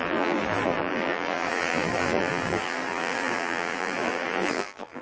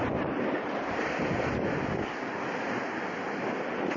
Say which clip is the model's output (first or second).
first